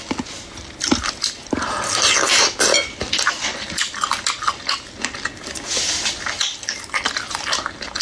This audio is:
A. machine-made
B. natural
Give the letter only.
B